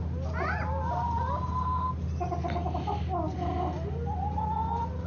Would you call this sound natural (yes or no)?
yes